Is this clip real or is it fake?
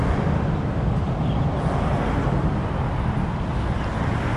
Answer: real